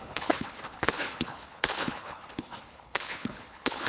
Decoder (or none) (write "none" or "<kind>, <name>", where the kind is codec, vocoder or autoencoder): codec, HILCodec